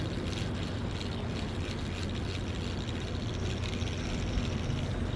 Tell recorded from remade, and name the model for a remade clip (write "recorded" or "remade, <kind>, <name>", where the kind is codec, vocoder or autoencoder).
recorded